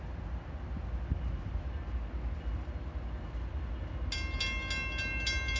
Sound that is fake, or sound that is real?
real